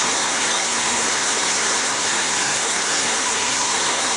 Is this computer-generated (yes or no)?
yes